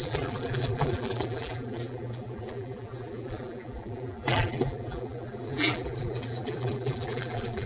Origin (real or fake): fake